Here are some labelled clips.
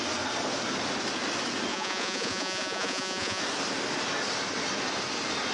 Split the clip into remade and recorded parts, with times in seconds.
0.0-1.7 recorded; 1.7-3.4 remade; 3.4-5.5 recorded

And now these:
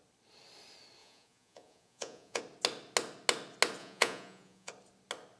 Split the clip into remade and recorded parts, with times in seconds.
0.0-1.0 recorded; 1.0-2.4 remade; 2.4-3.8 recorded; 3.8-4.7 remade; 4.7-5.4 recorded

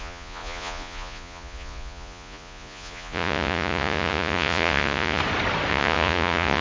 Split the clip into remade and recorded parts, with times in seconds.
0.0-5.2 remade; 5.2-5.7 recorded; 5.7-6.6 remade

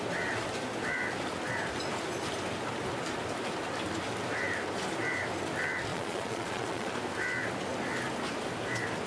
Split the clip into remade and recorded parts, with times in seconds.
0.0-5.9 recorded; 5.9-6.9 remade; 6.9-9.1 recorded

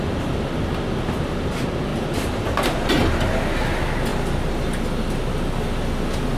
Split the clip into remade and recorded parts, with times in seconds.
0.0-6.4 recorded